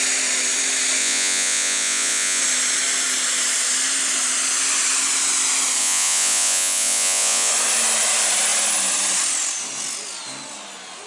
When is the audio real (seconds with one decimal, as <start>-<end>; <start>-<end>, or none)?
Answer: 0.0-1.0; 2.4-5.8; 7.5-11.1